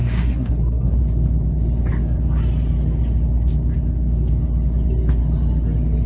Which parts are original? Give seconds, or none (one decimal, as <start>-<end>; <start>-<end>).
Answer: 1.0-6.1

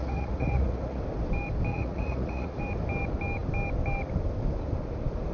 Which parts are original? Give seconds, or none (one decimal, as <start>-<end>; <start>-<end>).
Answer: 1.0-1.7; 2.6-5.3

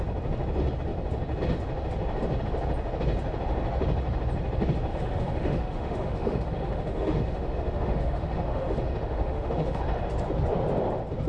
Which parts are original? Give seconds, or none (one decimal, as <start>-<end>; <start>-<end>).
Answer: 0.0-4.9; 9.8-11.3

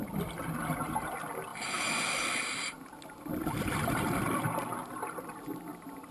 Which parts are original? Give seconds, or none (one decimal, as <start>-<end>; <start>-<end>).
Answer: 0.0-6.1

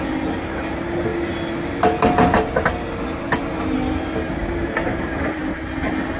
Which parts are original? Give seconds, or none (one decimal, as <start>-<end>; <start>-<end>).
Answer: 0.0-6.2